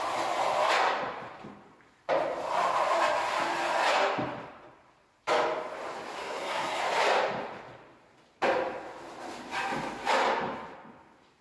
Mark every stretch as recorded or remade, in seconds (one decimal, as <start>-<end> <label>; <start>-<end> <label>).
0.0-6.2 recorded; 6.2-6.8 remade; 6.8-11.4 recorded